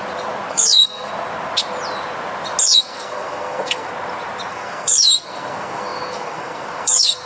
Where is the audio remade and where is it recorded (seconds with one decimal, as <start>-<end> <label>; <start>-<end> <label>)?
0.0-0.5 recorded; 0.5-1.1 remade; 1.1-2.6 recorded; 2.6-3.9 remade; 3.9-4.5 recorded; 4.5-7.3 remade